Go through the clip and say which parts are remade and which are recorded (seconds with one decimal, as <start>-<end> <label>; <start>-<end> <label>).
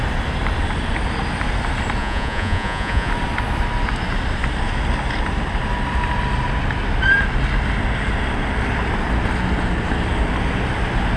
0.0-2.0 recorded; 2.0-3.1 remade; 3.1-11.2 recorded